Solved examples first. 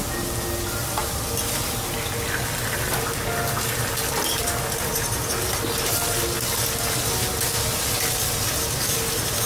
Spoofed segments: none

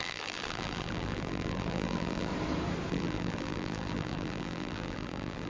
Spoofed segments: 0.0-2.3 (vocoder, BigVGAN v2); 2.9-5.5

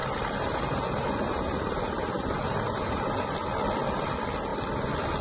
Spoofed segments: 0.0-3.1 (vocoder, BigVGAN v2)

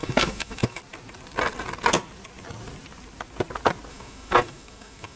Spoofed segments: 0.0-0.8 (autoencoder, DAC-VAE); 3.9-5.2

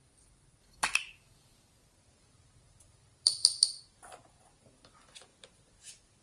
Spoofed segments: 0.0-1.5 (vocoder, BigVGAN v2); 3.0-3.4; 4.3-5.3